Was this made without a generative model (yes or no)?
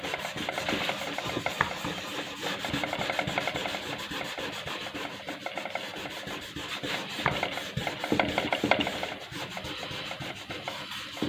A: yes